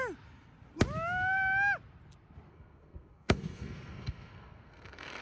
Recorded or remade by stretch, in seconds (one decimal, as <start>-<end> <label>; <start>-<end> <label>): 0.0-2.5 recorded; 2.5-5.2 remade